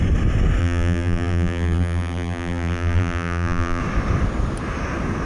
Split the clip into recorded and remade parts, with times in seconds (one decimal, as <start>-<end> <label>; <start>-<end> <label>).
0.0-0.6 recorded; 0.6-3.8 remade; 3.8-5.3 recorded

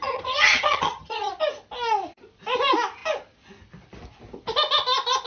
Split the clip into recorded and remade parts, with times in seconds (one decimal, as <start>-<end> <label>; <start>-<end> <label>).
0.0-1.3 remade; 1.3-5.3 recorded

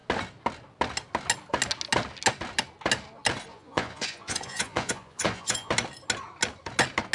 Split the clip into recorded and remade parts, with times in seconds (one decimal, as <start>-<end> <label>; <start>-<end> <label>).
0.0-3.5 recorded; 3.5-5.7 remade; 5.7-7.1 recorded

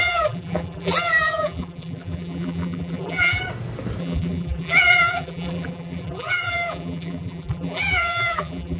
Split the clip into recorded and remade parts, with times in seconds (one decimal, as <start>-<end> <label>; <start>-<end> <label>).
0.0-3.4 remade; 3.4-4.0 recorded; 4.0-8.8 remade

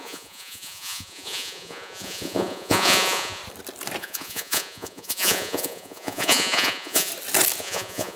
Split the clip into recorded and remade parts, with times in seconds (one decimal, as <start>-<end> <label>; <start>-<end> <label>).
0.0-3.4 remade; 3.4-4.0 recorded; 4.0-7.1 remade; 7.1-7.6 recorded; 7.6-8.2 remade

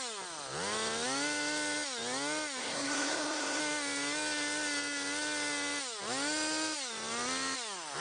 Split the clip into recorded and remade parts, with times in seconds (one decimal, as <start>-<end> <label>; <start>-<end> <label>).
0.0-2.6 recorded; 2.6-3.6 remade; 3.6-8.0 recorded

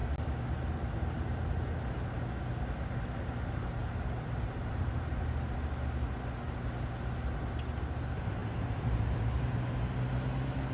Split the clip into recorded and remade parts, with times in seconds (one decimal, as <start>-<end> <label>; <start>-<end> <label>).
0.0-3.8 recorded; 3.8-4.9 remade; 4.9-8.4 recorded; 8.4-9.8 remade; 9.8-10.7 recorded